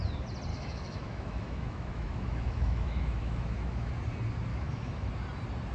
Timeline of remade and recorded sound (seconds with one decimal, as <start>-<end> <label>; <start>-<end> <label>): 0.0-0.5 recorded; 0.5-3.9 remade; 3.9-4.5 recorded; 4.5-5.1 remade; 5.1-5.7 recorded